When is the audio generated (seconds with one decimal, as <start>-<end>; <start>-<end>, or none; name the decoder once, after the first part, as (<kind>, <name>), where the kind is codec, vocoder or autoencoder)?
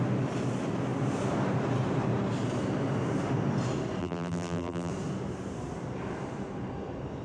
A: 4.0-4.9 (vocoder, BigVGAN v2)